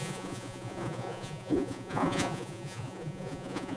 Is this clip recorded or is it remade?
remade